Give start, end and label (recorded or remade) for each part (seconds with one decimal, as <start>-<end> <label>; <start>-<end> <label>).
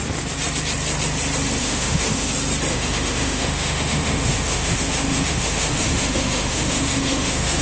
0.0-1.6 recorded; 1.6-2.3 remade; 2.3-2.7 recorded; 2.7-7.6 remade